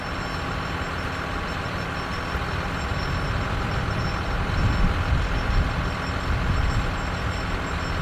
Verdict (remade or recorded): recorded